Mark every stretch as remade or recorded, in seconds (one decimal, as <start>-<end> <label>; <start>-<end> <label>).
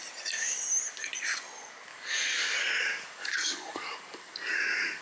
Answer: 0.0-1.9 recorded; 1.9-5.0 remade